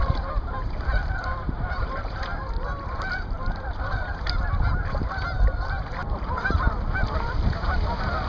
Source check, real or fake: fake